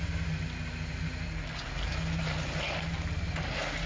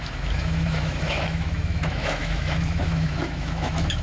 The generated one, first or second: second